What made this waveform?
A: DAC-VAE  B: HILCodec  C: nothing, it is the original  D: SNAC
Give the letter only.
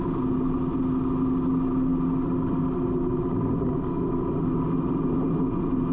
C